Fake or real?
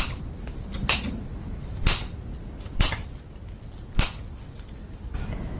real